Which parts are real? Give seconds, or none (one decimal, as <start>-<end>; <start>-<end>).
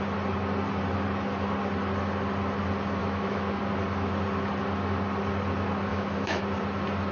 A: 0.0-3.0; 3.6-5.9; 6.4-7.1